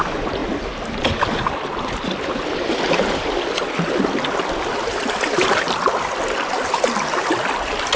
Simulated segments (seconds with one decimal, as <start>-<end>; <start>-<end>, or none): none